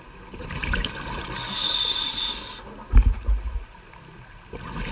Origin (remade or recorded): recorded